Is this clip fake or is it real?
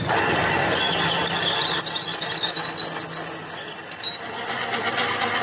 real